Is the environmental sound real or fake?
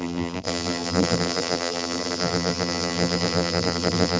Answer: fake